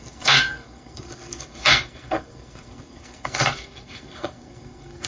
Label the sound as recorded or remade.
remade